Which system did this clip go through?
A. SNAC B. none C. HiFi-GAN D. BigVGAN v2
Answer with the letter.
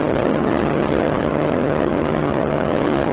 C